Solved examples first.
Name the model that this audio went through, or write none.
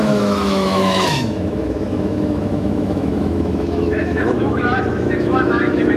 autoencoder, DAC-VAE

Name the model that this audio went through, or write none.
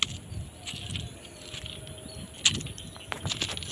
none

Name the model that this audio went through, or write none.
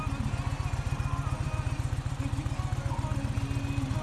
none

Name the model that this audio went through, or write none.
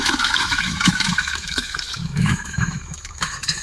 autoencoder, DAC-VAE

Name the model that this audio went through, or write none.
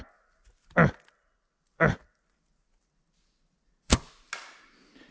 none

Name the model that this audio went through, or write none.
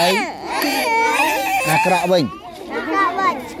none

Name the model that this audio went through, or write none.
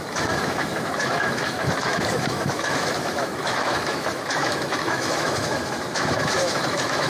autoencoder, DAC-VAE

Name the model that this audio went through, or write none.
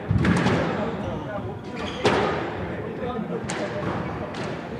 none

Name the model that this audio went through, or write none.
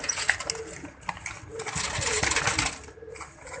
none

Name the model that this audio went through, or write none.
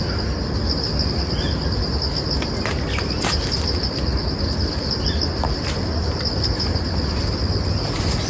none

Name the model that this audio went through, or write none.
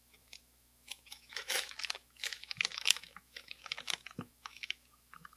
autoencoder, DAC-VAE